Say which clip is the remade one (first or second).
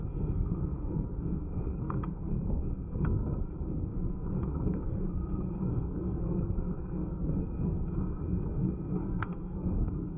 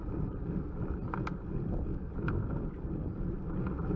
first